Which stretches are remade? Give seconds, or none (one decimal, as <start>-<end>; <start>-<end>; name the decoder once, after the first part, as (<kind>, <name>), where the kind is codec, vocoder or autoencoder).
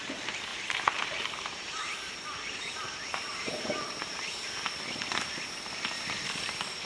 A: 0.5-4.4 (vocoder, BigVGAN v2)